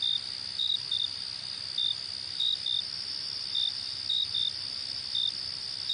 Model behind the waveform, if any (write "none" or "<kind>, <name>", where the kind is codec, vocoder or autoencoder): none